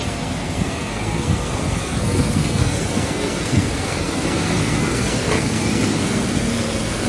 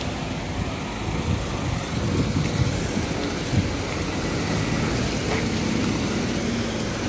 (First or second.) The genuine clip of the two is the second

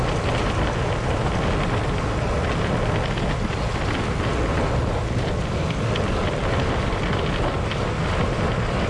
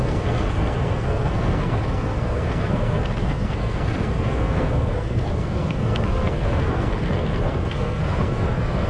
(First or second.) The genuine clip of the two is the first